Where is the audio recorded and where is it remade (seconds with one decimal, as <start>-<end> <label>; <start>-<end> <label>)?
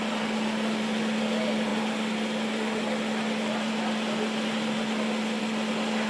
0.0-6.1 recorded